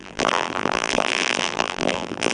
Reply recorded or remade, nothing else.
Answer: remade